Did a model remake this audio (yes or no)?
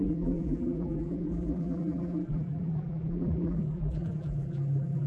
yes